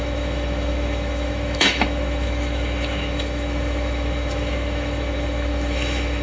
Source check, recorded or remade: remade